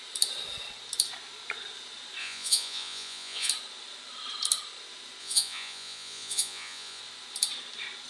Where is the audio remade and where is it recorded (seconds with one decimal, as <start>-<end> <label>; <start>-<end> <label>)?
0.0-2.2 recorded; 2.2-3.5 remade; 3.5-5.2 recorded; 5.2-7.0 remade; 7.0-8.1 recorded